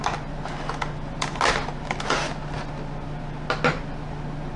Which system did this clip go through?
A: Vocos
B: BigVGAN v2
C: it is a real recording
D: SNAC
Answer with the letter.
C